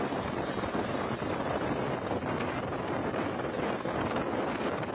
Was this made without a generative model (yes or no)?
no